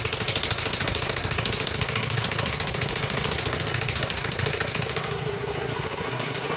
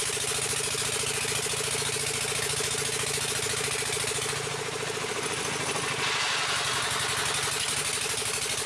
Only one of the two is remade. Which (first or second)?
first